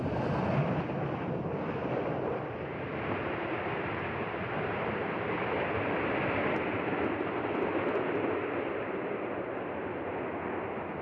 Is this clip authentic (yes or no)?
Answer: yes